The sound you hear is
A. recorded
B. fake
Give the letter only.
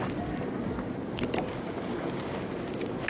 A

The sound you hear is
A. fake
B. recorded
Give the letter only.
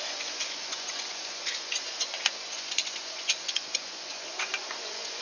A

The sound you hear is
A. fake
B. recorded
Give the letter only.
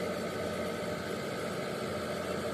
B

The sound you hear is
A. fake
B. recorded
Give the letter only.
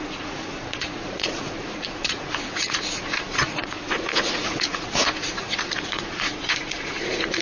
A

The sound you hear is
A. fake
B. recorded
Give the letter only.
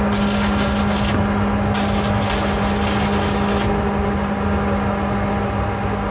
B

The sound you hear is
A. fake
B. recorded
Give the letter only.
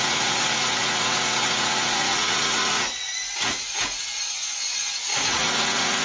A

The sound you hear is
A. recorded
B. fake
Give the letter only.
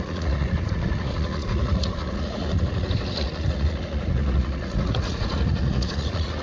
B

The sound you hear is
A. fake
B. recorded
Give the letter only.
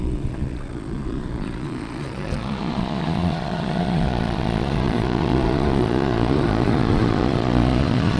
A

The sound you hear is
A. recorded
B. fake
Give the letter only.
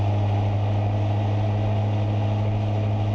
A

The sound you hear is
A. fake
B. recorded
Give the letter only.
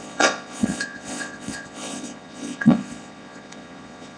A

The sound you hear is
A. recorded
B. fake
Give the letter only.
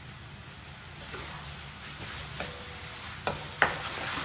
A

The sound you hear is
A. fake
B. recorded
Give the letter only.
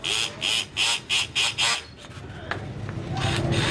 B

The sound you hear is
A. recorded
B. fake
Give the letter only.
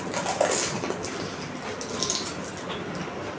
A